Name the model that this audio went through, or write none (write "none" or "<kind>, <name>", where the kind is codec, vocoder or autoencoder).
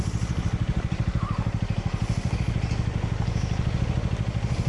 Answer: none